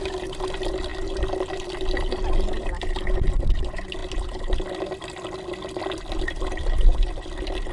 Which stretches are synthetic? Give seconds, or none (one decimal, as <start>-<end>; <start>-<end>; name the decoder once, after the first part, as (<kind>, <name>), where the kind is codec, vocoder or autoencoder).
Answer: none